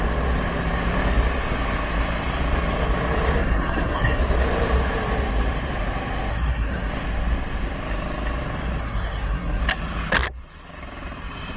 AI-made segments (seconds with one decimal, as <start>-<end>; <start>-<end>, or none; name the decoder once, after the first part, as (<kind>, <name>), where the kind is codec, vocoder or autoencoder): 3.4-4.2 (codec, SNAC); 6.3-6.9; 8.8-9.6